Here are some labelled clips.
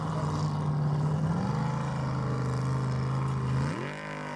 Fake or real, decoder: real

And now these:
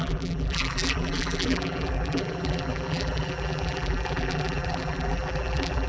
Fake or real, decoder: fake, vocoder, BigVGAN v2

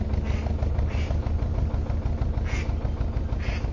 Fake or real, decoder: real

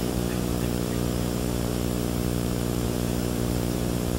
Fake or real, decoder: fake, vocoder, BigVGAN v2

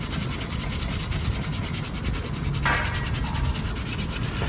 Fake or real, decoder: real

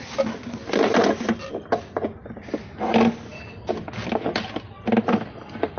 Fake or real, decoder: real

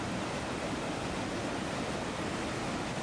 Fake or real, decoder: real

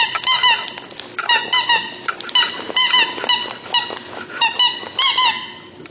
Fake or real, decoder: real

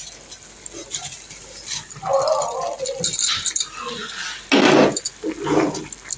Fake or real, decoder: real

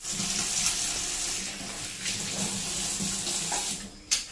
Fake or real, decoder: real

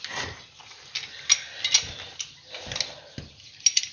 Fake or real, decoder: real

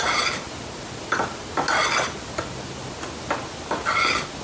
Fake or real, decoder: real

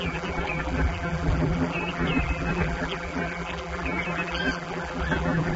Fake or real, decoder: fake, vocoder, BigVGAN v2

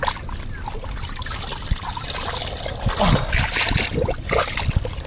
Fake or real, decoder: real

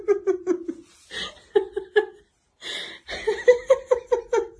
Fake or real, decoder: real